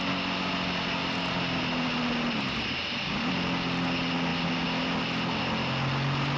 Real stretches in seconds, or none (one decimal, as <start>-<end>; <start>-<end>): 0.0-6.4